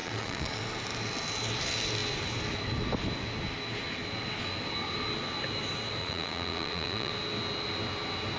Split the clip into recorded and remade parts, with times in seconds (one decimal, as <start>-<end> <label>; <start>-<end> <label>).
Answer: 0.0-0.6 remade; 0.6-6.0 recorded; 6.0-7.1 remade; 7.1-8.4 recorded